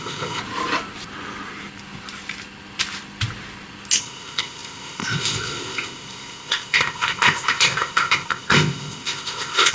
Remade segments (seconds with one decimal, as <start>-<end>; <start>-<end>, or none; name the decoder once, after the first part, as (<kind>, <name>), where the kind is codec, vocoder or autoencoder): 0.0-0.4 (codec, ZipCodec); 4.0-9.7